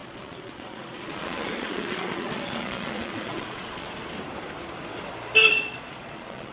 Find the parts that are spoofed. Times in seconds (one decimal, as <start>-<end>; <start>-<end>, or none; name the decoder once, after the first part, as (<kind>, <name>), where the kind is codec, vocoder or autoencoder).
0.0-3.9 (vocoder, Vocos); 5.5-6.5